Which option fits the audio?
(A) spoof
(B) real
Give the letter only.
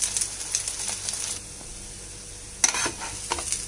B